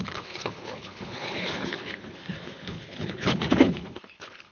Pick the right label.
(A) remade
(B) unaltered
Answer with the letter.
A